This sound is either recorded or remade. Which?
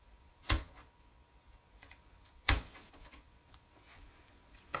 remade